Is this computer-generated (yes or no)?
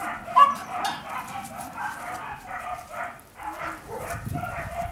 yes